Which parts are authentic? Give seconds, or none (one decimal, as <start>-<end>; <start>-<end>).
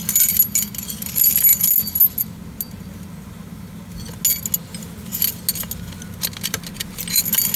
0.0-7.6